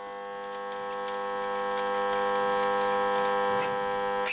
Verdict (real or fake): real